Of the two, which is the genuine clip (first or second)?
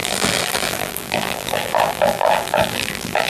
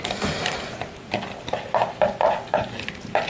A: second